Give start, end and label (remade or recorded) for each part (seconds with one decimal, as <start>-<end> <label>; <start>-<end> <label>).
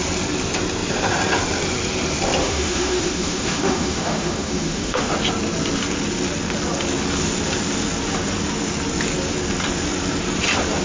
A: 0.0-2.4 recorded; 2.4-5.1 remade; 5.1-10.8 recorded